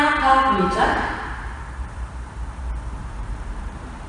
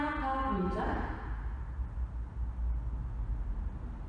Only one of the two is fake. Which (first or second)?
first